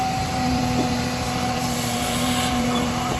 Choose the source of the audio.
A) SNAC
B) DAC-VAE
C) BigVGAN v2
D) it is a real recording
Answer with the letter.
C